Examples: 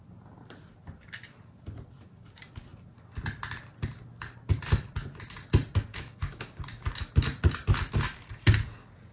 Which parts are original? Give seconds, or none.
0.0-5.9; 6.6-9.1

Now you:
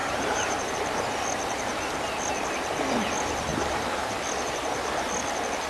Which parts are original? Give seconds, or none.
0.7-3.5; 4.1-5.7

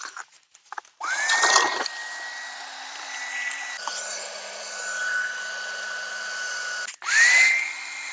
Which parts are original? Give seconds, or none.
0.0-8.1

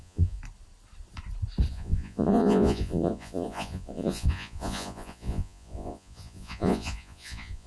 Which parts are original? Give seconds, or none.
0.4-1.7

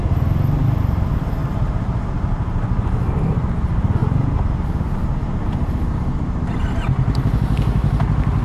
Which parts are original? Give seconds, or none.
0.0-1.4; 2.1-4.0; 6.0-8.4